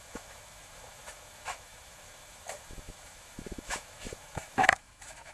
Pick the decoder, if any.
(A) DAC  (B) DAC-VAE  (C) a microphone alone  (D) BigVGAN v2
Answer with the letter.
B